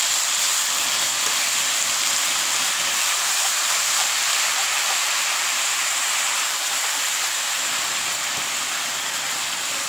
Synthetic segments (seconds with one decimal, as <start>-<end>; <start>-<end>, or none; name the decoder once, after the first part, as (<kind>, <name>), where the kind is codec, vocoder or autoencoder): 2.8-7.7 (vocoder, BigVGAN v2)